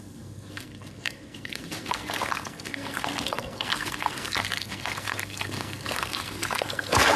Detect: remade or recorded remade